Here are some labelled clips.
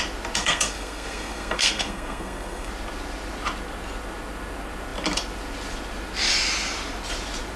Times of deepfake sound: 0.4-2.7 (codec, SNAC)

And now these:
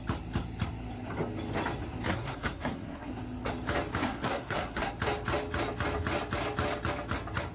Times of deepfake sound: 2.1-3.1 (codec, SNAC); 4.0-4.9

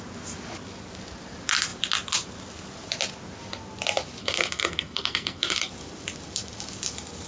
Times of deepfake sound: 4.2-5.7 (codec, SNAC)

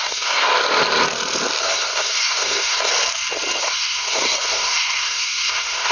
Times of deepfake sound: 0.0-0.5 (codec, SNAC); 1.6-2.9; 3.6-5.9

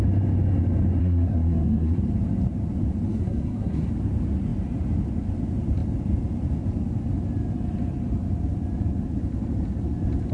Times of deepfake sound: 1.0-2.0 (codec, SNAC); 3.1-3.9